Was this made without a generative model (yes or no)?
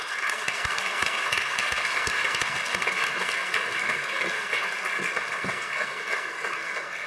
no